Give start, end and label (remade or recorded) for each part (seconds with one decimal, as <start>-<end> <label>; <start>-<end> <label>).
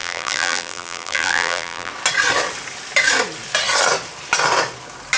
0.0-1.9 remade; 1.9-5.2 recorded